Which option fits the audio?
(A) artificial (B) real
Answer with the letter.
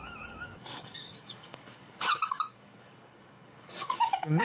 A